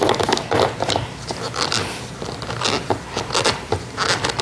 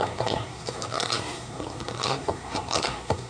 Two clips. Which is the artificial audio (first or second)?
second